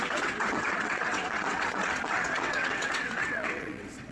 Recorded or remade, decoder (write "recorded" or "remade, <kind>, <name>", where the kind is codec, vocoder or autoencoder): remade, vocoder, WaveNeXt